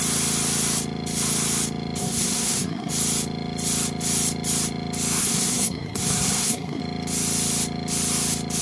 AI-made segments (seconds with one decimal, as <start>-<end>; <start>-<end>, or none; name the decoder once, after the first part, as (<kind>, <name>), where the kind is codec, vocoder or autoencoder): 2.0-2.9 (codec, SNAC); 5.2-6.8

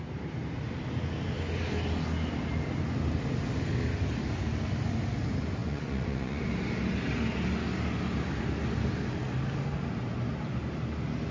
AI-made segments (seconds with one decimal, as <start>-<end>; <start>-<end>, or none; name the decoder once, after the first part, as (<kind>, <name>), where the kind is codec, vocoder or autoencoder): 5.6-6.4 (vocoder, Vocos)

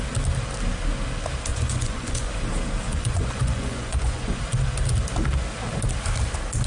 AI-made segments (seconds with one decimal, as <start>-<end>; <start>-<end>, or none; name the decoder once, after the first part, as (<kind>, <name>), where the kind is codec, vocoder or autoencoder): 1.5-2.3 (vocoder, Vocos); 2.9-4.4

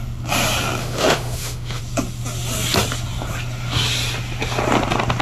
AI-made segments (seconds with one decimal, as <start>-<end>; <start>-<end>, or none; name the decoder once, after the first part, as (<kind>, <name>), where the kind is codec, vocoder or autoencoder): 0.8-1.8 (autoencoder, DAC-VAE)

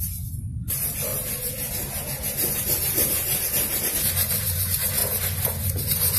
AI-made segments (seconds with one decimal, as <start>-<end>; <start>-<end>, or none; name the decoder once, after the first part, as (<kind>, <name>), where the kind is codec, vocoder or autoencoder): 0.0-1.1 (vocoder, BigVGAN v2); 2.5-5.0; 5.6-6.2

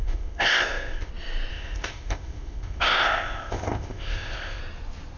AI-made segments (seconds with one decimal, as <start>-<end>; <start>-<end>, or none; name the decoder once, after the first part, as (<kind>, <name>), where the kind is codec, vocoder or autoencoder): 0.0-1.1 (codec, ZipCodec); 1.5-4.6

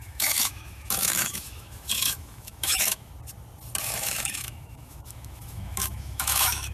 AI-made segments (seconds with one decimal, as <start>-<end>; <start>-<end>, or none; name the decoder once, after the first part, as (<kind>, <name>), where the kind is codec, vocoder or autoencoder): 0.0-3.1 (autoencoder, DAC-VAE); 3.8-6.7

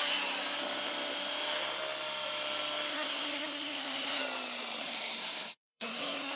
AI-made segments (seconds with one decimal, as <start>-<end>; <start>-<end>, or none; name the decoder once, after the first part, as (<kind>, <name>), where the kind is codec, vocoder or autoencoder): 2.9-4.2 (codec, SNAC); 4.8-6.4